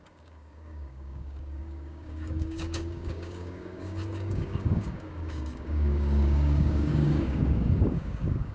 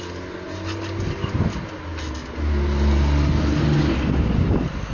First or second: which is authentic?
second